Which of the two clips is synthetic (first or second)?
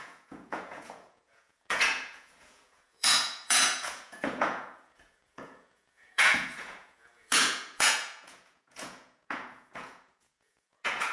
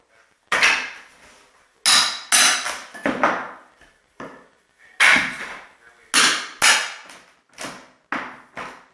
first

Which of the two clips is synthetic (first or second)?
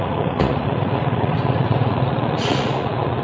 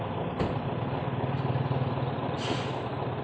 first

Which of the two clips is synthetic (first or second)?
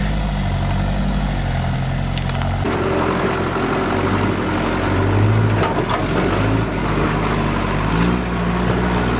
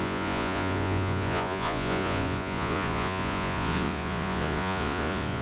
second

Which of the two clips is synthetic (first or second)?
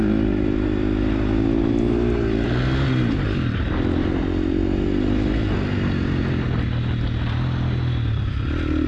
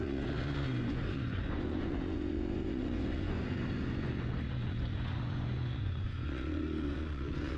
second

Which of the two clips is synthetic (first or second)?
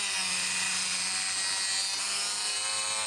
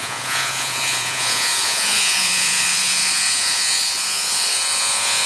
second